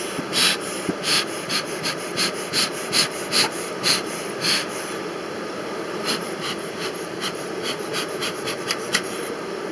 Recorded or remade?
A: remade